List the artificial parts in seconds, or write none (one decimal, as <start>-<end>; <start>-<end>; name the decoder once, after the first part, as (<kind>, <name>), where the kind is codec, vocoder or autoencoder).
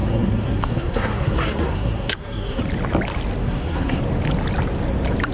0.0-2.6 (codec, SNAC); 3.4-4.0